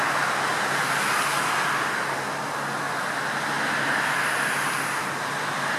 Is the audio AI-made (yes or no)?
no